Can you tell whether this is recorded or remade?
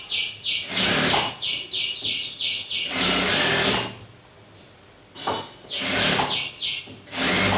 recorded